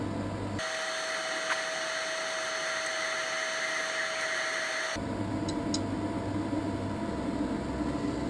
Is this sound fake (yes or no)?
no